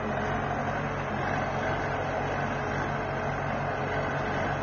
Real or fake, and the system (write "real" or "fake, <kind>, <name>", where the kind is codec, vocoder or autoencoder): real